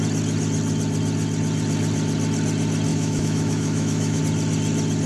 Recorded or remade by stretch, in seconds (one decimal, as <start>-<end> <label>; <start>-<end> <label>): 0.0-2.9 recorded; 2.9-4.2 remade; 4.2-5.1 recorded